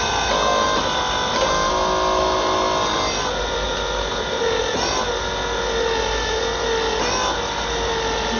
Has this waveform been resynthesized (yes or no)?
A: no